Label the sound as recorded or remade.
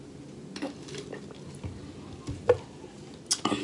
recorded